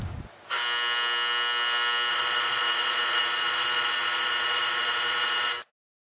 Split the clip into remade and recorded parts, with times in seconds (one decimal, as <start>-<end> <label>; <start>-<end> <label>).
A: 0.0-2.1 recorded; 2.1-5.5 remade; 5.5-6.0 recorded

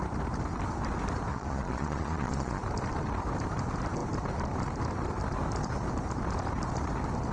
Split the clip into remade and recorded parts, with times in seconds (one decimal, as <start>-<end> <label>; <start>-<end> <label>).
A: 0.0-1.3 recorded; 1.3-2.6 remade; 2.6-7.3 recorded

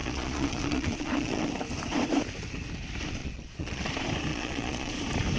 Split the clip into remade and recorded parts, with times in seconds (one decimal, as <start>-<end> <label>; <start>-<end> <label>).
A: 0.0-1.5 remade; 1.5-3.2 recorded; 3.2-3.8 remade; 3.8-4.3 recorded; 4.3-4.9 remade; 4.9-5.4 recorded

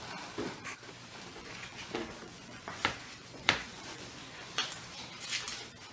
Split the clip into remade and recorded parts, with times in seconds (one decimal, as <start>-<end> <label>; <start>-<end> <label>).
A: 0.0-1.3 recorded; 1.3-4.8 remade; 4.8-5.9 recorded

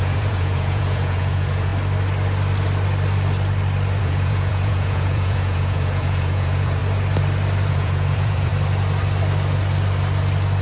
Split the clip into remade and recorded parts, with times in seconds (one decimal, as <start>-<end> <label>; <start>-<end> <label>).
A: 0.0-1.7 remade; 1.7-4.0 recorded; 4.0-6.8 remade; 6.8-7.7 recorded; 7.7-8.5 remade; 8.5-10.6 recorded

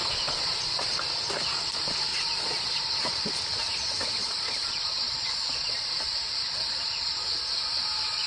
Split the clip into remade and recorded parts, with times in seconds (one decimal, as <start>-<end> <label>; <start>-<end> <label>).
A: 0.0-0.6 remade; 0.6-2.1 recorded; 2.1-3.2 remade; 3.2-4.2 recorded; 4.2-7.2 remade; 7.2-8.3 recorded